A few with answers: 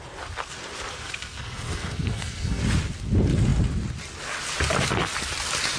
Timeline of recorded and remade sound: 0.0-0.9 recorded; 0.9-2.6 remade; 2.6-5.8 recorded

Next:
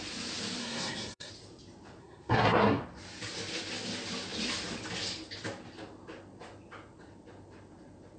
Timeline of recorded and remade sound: 0.0-0.6 recorded; 0.6-1.3 remade; 1.3-2.0 recorded; 2.0-2.8 remade; 2.8-8.2 recorded

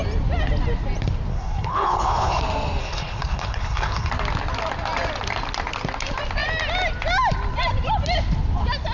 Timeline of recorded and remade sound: 0.0-1.3 recorded; 1.3-2.4 remade; 2.4-2.8 recorded; 2.8-4.1 remade; 4.1-8.9 recorded

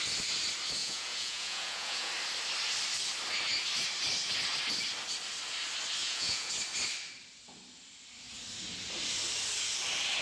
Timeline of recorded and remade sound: 0.0-0.8 recorded; 0.8-2.1 remade; 2.1-6.0 recorded; 6.0-6.5 remade; 6.5-10.2 recorded

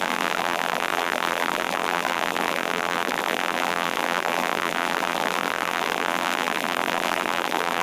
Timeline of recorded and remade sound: 0.0-7.8 remade

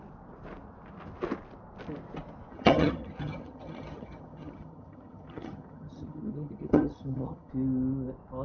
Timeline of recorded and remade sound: 0.0-2.5 recorded; 2.5-7.5 remade; 7.5-8.4 recorded